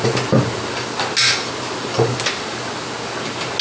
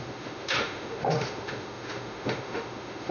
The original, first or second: first